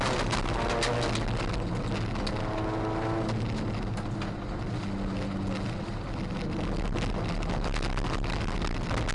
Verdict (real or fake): real